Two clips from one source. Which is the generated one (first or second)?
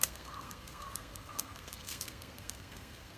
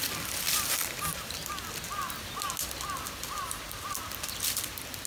first